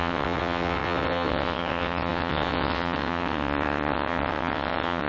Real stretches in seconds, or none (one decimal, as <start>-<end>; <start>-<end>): none